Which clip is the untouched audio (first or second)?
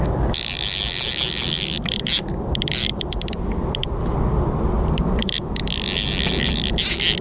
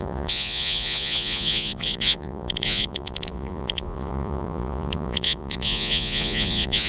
first